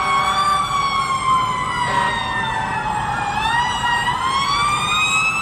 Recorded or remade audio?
recorded